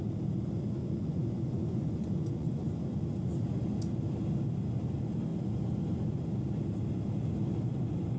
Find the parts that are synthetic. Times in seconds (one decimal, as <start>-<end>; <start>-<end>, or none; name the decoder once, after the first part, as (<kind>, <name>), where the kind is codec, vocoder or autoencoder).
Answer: 0.8-3.1 (vocoder, Vocos)